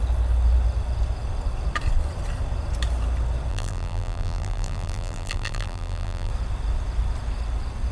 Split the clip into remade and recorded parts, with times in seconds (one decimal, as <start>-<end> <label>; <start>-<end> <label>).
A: 0.0-3.5 recorded; 3.5-6.3 remade; 6.3-7.9 recorded

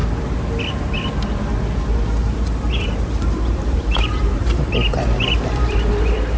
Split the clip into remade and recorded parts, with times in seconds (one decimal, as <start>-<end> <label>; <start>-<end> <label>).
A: 0.0-2.2 recorded; 2.2-5.9 remade; 5.9-6.4 recorded

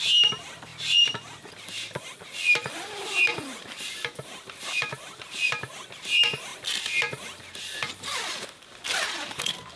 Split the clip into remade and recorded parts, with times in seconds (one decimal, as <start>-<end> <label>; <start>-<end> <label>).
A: 0.0-9.8 remade

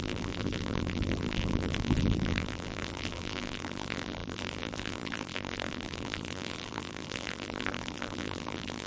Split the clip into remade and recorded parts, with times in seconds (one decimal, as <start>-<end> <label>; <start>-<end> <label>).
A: 0.0-8.9 remade

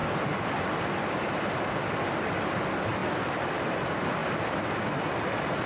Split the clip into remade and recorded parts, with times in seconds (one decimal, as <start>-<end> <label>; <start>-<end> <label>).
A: 0.0-5.7 recorded

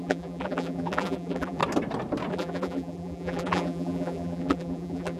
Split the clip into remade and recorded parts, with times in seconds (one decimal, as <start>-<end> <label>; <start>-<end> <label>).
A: 0.0-1.6 remade; 1.6-2.3 recorded; 2.3-5.2 remade

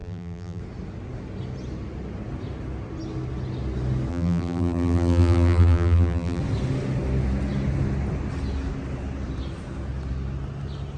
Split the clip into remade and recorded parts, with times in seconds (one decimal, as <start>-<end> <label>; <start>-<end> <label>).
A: 0.0-0.6 remade; 0.6-4.1 recorded; 4.1-6.4 remade; 6.4-11.0 recorded